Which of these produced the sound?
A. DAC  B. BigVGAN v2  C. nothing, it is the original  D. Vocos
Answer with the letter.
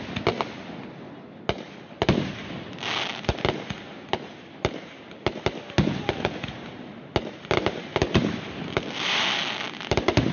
C